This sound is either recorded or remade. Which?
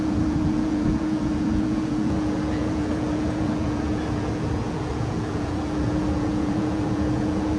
remade